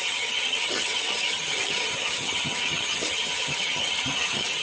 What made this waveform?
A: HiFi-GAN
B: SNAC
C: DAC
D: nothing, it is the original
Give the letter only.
A